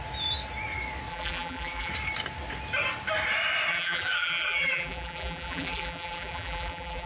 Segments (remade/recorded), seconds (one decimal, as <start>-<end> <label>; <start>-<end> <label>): 0.0-1.1 recorded; 1.1-1.9 remade; 1.9-3.7 recorded; 3.7-7.1 remade